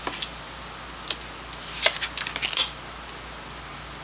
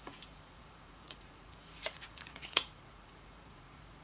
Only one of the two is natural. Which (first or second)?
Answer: first